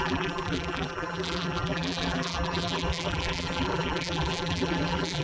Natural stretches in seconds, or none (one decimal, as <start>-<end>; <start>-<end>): none